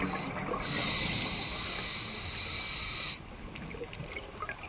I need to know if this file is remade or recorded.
recorded